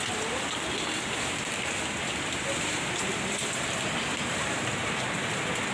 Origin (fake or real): real